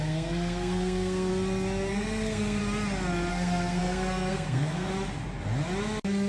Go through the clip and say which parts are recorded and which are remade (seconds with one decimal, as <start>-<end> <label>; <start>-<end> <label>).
0.0-1.3 remade; 1.3-1.9 recorded; 1.9-2.6 remade; 2.6-3.3 recorded; 3.3-4.9 remade; 4.9-6.3 recorded